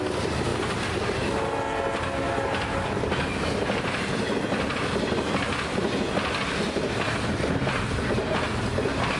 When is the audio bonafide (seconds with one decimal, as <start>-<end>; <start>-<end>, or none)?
0.0-9.2